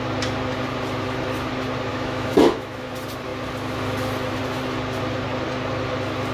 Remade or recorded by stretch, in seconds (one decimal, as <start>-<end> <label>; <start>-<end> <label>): 0.0-1.9 recorded; 1.9-2.9 remade; 2.9-6.3 recorded